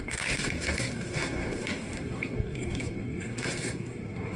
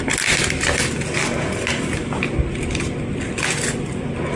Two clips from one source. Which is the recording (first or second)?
second